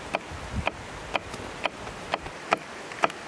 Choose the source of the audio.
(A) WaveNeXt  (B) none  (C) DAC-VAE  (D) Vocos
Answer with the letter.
B